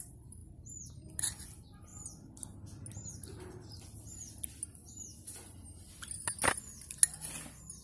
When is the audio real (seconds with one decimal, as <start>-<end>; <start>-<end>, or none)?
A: 0.0-7.8